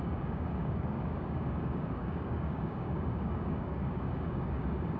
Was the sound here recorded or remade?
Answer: remade